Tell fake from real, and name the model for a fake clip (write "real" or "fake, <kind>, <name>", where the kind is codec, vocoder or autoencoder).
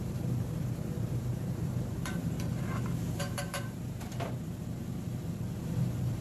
fake, vocoder, BigVGAN v2